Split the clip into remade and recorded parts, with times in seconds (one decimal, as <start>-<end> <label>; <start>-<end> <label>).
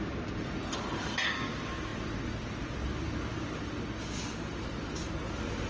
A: 0.0-5.7 recorded